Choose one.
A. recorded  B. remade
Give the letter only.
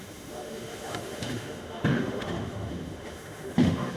B